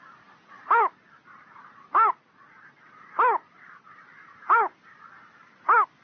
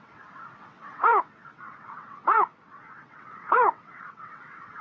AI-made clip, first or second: second